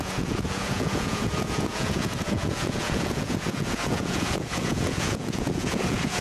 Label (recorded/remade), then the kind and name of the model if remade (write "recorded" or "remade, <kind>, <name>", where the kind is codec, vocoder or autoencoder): remade, vocoder, Vocos